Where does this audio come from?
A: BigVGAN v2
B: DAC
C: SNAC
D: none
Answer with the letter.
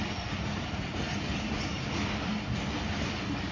D